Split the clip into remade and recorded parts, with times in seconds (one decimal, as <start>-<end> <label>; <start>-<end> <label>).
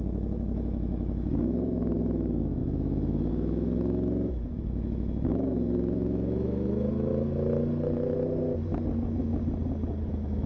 0.0-7.1 remade; 7.1-10.1 recorded; 10.1-10.5 remade